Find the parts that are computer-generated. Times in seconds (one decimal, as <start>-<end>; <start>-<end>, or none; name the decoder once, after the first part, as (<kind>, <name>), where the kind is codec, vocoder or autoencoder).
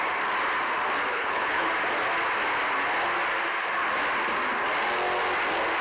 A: 1.1-1.7 (codec, HILCodec)